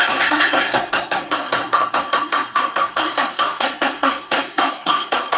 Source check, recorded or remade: remade